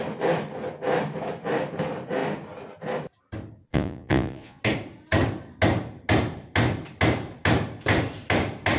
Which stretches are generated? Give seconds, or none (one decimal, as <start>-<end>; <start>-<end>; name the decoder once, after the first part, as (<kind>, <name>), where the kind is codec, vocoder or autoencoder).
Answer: 3.7-4.6 (vocoder, Vocos)